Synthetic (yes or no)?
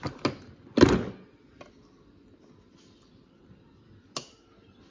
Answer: no